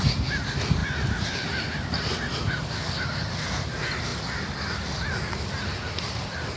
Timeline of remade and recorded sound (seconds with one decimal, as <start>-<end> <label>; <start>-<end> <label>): 0.0-6.6 recorded